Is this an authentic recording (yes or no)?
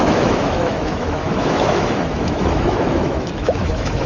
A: no